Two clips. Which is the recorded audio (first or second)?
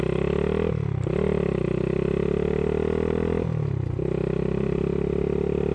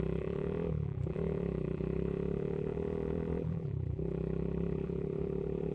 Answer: first